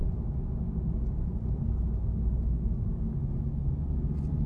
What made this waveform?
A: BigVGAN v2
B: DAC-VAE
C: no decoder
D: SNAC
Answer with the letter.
C